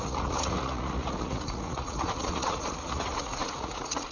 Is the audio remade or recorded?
remade